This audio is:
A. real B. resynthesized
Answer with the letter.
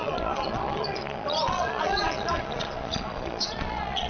B